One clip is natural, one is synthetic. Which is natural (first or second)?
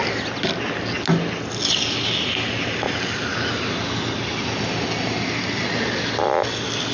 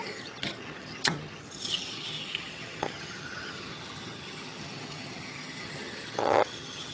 first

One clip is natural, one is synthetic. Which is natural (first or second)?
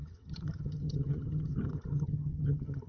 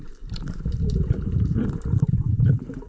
second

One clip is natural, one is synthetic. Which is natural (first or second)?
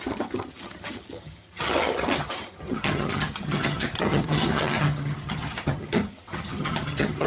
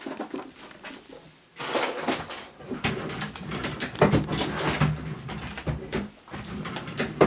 second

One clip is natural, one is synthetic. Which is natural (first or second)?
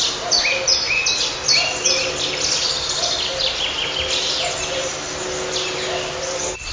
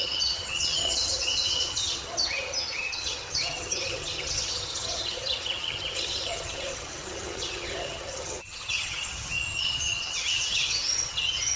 first